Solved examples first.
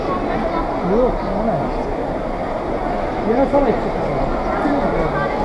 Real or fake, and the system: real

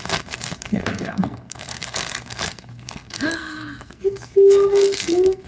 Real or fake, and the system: fake, codec, SNAC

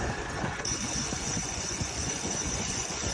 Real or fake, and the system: fake, vocoder, Vocos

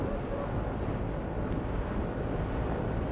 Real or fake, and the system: real